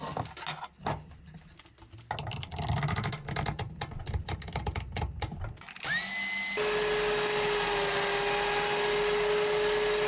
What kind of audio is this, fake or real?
real